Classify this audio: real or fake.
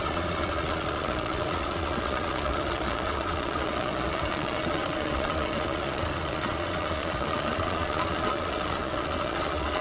fake